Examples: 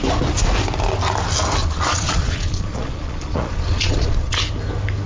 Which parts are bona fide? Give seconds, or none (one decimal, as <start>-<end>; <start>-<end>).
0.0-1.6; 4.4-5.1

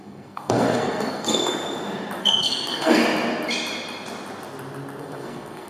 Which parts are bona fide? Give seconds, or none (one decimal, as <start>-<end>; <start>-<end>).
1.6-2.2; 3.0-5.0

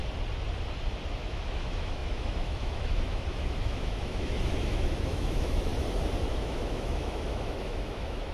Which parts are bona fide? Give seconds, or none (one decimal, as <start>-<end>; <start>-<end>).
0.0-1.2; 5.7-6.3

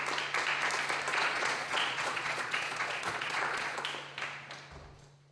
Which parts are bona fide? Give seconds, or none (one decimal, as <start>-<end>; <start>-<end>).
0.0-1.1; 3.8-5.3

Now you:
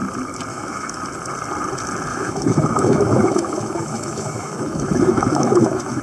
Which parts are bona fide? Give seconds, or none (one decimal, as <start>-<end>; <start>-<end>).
0.0-0.5; 1.0-2.1